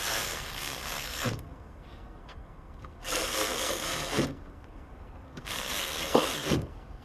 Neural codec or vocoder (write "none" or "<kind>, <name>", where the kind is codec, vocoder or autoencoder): codec, SNAC